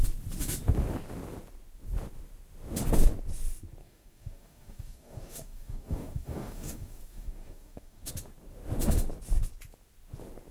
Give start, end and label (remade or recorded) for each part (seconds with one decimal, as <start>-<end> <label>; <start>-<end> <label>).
0.0-3.8 recorded; 3.8-8.1 remade; 8.1-10.5 recorded